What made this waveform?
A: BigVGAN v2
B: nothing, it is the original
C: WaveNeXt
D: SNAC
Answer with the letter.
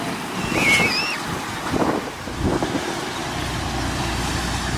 B